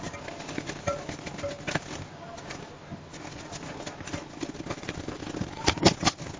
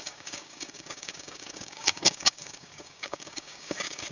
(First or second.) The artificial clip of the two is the second